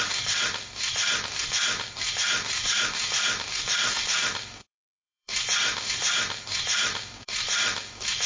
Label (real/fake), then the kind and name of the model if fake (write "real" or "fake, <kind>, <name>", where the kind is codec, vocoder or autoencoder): fake, codec, DAC